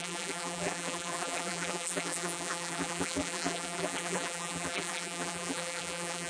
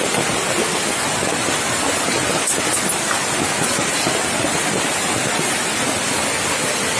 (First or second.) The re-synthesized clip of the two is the first